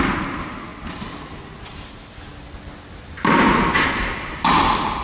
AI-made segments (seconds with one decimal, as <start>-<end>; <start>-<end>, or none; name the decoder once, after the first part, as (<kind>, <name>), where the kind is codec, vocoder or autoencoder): none